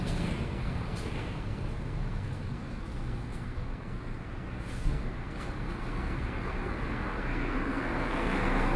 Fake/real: fake